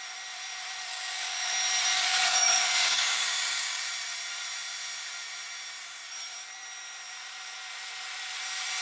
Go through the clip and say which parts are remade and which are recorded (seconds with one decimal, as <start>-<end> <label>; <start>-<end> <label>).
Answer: 0.0-0.9 recorded; 0.9-1.5 remade; 1.5-1.9 recorded; 1.9-3.8 remade; 3.8-8.8 recorded